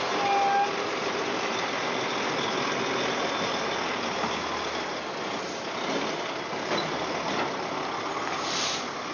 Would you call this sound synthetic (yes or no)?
no